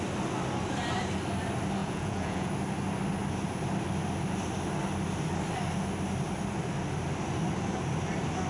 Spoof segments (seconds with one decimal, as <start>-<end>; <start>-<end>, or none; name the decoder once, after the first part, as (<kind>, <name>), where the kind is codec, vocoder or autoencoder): 1.8-2.5 (vocoder, Vocos)